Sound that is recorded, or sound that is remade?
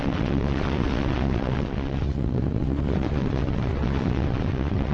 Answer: remade